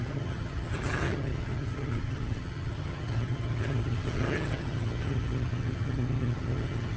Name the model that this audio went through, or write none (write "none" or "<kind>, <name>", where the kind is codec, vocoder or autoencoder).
vocoder, HiFi-GAN